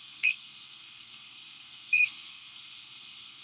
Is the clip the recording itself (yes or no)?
no